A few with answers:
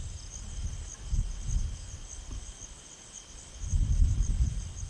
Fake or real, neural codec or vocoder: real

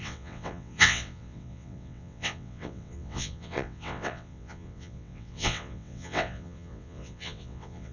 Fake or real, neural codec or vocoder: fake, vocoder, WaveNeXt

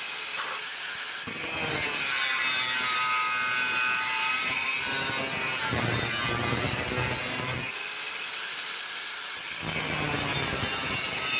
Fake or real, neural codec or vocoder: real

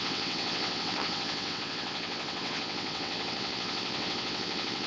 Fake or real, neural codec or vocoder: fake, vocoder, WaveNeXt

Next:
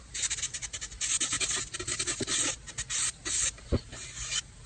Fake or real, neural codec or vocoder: real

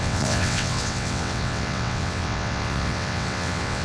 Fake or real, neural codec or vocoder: fake, vocoder, WaveNeXt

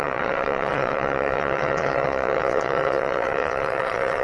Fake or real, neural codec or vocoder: fake, vocoder, WaveNeXt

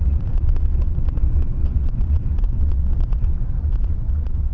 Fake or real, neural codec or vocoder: fake, vocoder, WaveNeXt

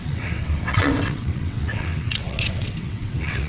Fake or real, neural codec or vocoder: fake, vocoder, WaveNeXt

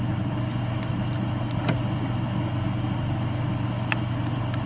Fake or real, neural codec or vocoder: real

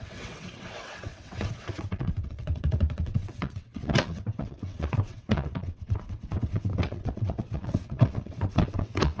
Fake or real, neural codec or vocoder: fake, vocoder, WaveNeXt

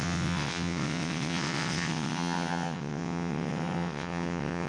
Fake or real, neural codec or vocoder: fake, vocoder, WaveNeXt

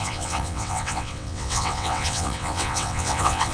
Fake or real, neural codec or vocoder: fake, vocoder, WaveNeXt